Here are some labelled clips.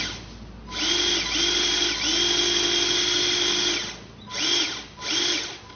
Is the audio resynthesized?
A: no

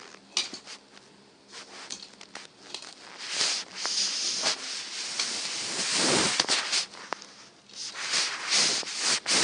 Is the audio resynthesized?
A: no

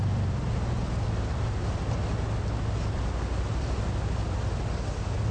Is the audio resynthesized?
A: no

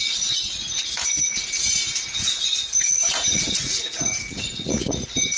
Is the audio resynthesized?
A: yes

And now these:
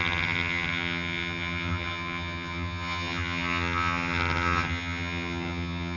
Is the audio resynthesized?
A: yes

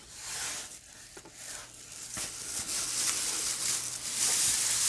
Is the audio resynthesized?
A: no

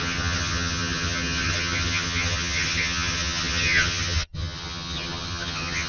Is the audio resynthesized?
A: yes